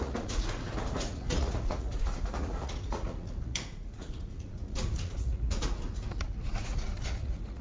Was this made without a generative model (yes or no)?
no